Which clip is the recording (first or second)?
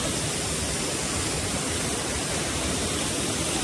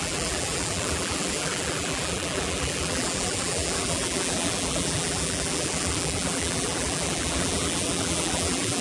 first